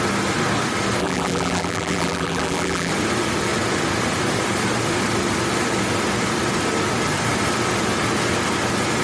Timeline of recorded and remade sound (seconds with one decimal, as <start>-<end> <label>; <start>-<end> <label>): 0.0-1.0 recorded; 1.0-2.9 remade; 2.9-9.0 recorded